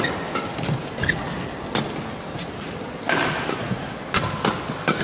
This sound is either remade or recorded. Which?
recorded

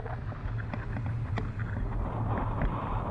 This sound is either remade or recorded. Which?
recorded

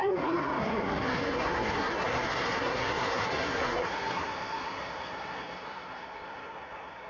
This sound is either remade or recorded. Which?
remade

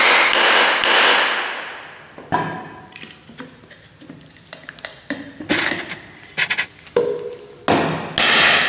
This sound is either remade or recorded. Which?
recorded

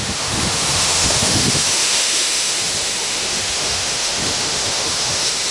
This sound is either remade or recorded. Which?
remade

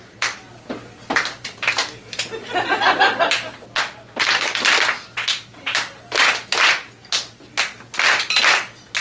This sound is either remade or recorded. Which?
recorded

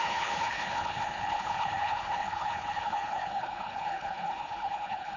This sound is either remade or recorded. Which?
remade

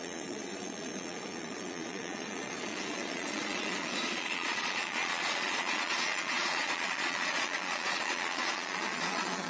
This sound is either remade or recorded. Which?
remade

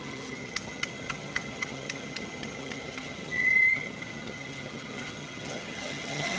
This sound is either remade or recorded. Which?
remade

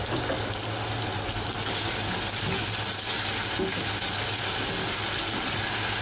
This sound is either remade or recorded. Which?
recorded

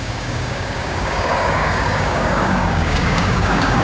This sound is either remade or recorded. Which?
remade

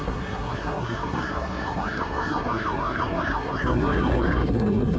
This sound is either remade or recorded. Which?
remade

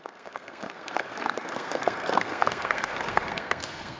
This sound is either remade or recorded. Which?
remade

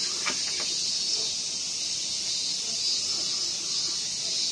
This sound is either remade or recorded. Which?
recorded